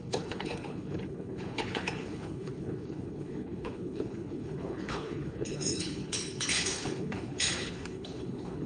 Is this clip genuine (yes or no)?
no